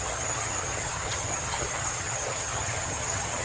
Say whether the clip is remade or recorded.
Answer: remade